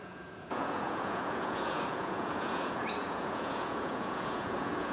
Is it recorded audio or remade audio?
remade